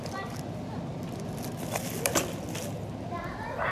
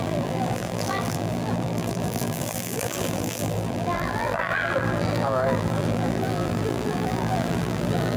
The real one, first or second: first